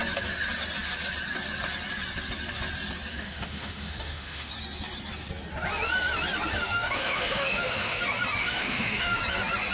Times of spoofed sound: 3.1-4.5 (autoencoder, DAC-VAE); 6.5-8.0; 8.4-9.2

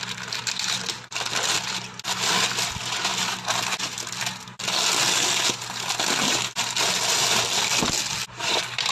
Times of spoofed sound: none

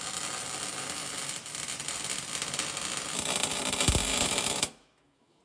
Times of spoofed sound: 4.1-5.4 (autoencoder, DAC-VAE)

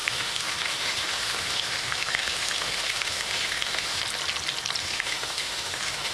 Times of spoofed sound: 0.0-4.0 (autoencoder, DAC-VAE); 4.8-6.1

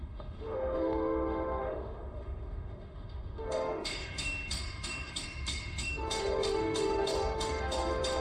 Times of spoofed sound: 0.0-8.2 (autoencoder, DAC-VAE)

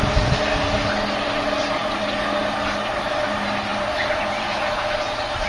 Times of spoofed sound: none